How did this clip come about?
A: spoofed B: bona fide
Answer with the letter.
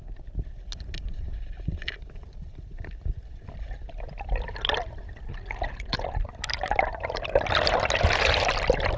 A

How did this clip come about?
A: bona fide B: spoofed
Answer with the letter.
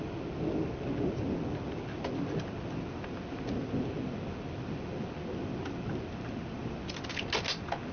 A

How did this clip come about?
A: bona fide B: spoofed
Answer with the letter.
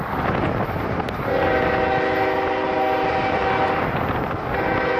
A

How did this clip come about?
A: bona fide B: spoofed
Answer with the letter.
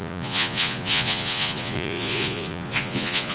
B